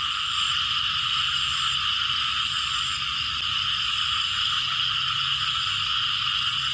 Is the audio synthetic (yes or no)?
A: no